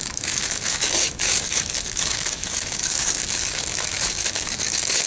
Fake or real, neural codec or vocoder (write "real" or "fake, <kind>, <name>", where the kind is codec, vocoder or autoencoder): fake, codec, DAC